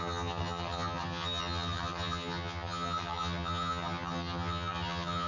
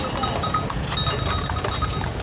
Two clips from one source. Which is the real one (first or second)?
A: second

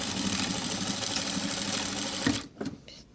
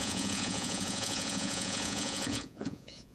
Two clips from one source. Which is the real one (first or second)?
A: first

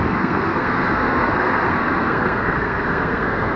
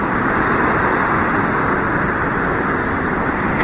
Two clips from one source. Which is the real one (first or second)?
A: second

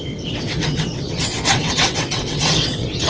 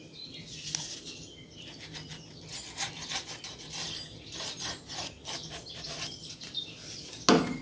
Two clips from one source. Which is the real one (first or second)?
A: second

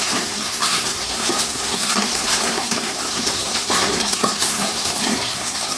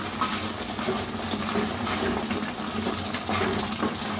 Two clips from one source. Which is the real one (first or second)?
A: second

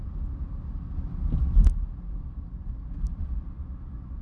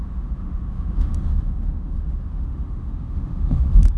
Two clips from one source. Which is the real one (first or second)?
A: first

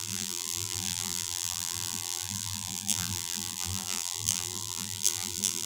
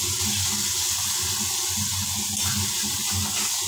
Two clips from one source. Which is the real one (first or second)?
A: second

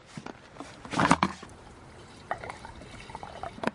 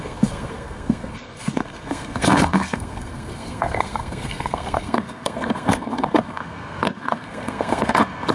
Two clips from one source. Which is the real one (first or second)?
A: first